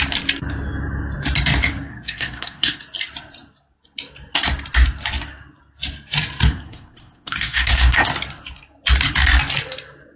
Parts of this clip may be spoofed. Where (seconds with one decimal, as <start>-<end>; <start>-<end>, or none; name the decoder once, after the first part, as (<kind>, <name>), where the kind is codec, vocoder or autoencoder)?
1.9-2.8 (codec, SNAC); 6.5-8.1